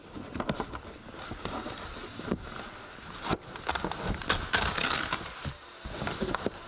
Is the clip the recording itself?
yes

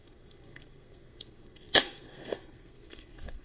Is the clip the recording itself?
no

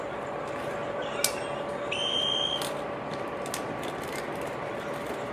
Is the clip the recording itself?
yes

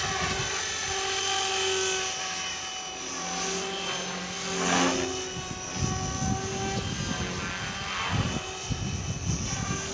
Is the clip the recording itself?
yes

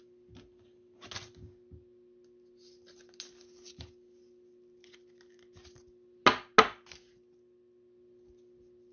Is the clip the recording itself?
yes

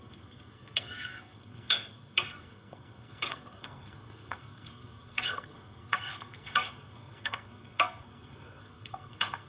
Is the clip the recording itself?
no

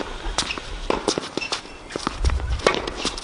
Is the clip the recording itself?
yes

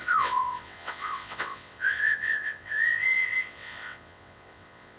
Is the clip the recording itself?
no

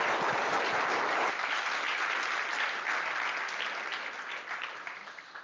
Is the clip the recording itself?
yes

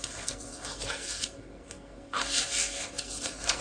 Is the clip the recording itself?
no